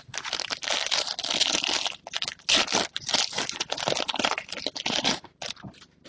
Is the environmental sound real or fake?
real